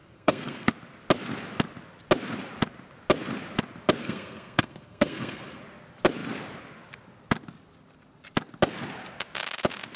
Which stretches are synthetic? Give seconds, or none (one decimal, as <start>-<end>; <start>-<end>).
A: 0.0-0.7; 4.0-5.6